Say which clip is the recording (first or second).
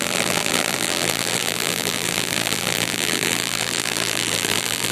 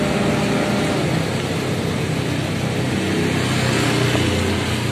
second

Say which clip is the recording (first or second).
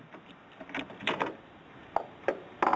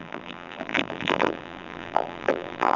first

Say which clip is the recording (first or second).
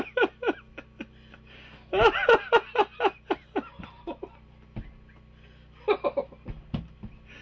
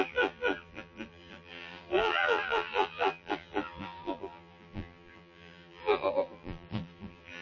first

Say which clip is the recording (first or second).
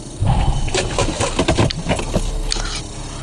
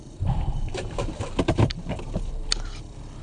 first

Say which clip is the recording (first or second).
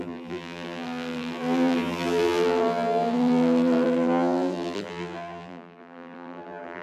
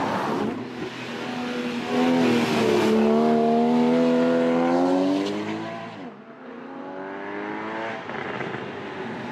second